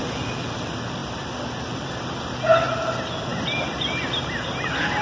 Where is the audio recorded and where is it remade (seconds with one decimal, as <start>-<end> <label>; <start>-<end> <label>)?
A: 0.0-5.0 recorded